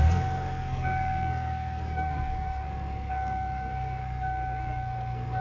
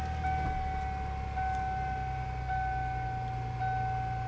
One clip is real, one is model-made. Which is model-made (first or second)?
first